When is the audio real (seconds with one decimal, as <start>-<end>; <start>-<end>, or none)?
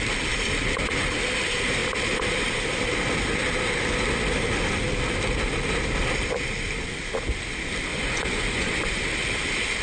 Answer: 0.0-7.9; 9.0-9.8